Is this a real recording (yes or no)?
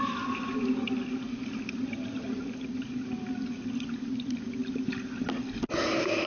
yes